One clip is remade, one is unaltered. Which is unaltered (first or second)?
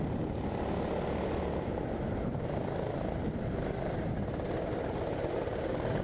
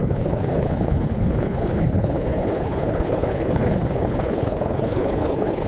first